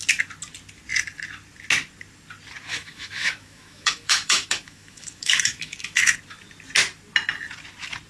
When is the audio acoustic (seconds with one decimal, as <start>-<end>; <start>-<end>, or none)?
0.0-2.7; 6.0-8.1